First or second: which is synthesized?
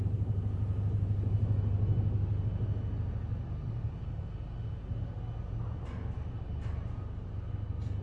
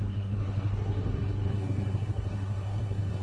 second